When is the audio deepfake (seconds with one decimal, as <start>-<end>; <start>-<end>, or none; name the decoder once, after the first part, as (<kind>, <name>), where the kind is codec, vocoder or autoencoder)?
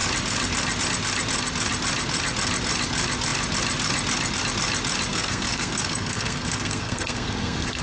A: 5.1-7.8 (codec, SNAC)